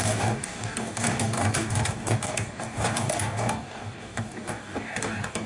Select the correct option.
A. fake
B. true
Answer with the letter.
A